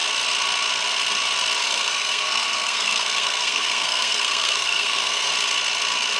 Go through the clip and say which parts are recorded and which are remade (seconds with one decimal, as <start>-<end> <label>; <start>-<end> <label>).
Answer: 0.0-1.6 recorded; 1.6-5.3 remade; 5.3-6.2 recorded